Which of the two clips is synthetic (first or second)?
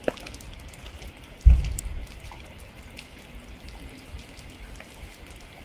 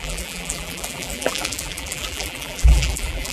second